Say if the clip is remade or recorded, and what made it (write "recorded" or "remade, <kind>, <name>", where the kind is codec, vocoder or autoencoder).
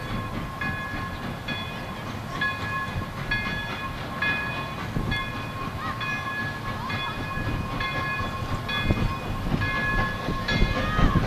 recorded